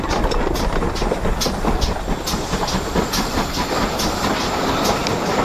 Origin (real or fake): real